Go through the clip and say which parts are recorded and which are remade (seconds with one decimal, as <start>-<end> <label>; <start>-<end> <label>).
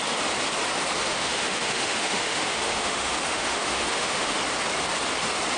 0.0-1.0 recorded; 1.0-4.4 remade; 4.4-5.6 recorded